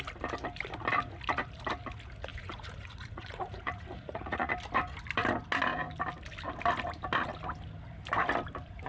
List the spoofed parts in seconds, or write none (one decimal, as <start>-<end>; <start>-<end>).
2.3-4.5